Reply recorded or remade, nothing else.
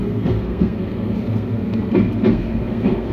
remade